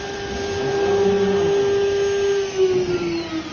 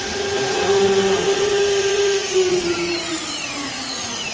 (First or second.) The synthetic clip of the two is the second